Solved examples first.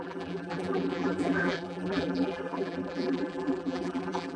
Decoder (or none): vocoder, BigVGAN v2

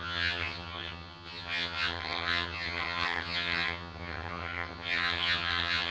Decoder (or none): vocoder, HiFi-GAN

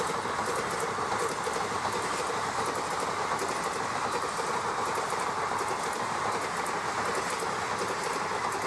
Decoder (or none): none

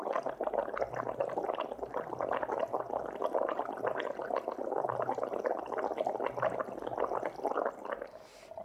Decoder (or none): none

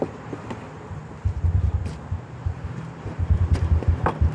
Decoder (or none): none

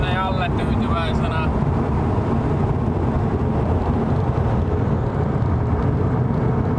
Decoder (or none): vocoder, BigVGAN v2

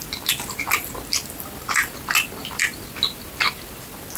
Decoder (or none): none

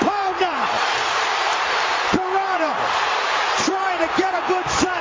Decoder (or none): vocoder, BigVGAN v2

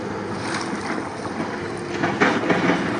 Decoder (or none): none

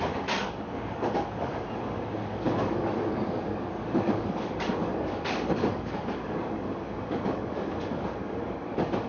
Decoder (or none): codec, DAC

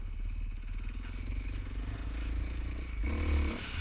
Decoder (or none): none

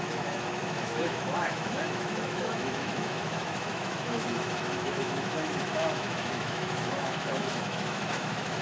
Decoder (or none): autoencoder, DAC-VAE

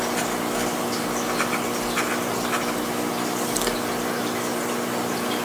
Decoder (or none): none